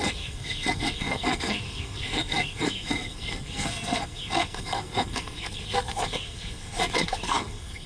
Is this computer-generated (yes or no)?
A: yes